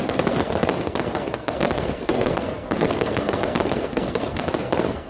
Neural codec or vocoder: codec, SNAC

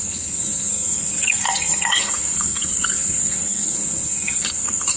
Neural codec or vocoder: codec, SNAC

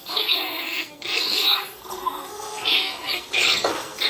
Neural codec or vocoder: codec, SNAC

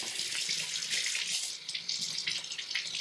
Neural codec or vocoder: none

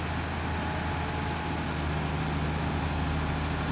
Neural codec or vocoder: none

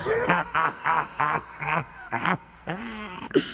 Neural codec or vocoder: codec, SNAC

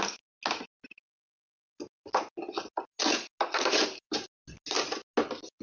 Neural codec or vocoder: none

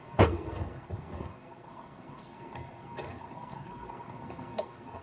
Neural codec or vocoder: codec, SNAC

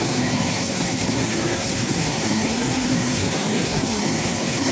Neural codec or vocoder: codec, SNAC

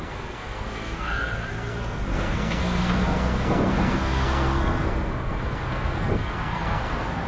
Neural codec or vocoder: codec, SNAC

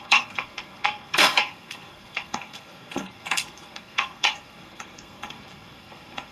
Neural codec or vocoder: codec, SNAC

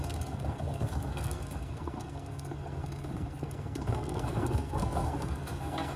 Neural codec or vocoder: codec, SNAC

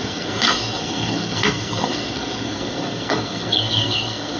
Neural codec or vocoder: codec, SNAC